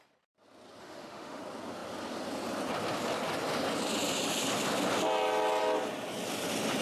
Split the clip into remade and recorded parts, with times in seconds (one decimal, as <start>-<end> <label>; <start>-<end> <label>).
0.0-0.8 recorded; 0.8-1.4 remade; 1.4-6.8 recorded